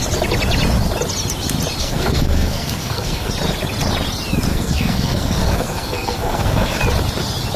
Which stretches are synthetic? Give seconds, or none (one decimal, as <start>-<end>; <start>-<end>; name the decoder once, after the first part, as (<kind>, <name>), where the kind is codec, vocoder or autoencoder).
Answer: 1.8-3.3 (codec, SNAC); 4.5-6.8